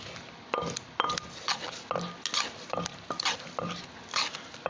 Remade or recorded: recorded